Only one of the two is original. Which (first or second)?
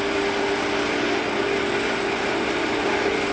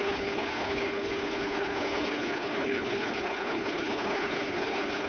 first